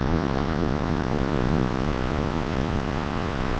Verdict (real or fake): fake